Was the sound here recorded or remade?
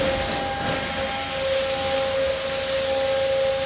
recorded